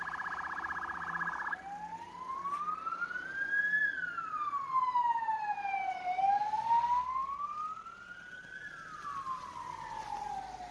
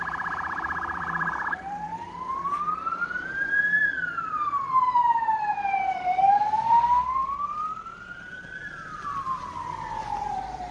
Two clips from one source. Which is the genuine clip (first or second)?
first